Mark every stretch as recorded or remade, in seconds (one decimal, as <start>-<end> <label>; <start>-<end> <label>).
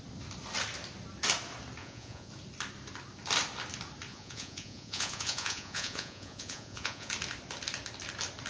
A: 0.0-1.8 recorded; 1.8-2.3 remade; 2.3-4.1 recorded; 4.1-7.1 remade; 7.1-8.5 recorded